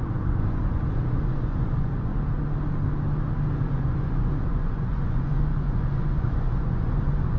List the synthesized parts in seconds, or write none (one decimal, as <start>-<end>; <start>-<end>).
0.0-2.1; 3.7-7.4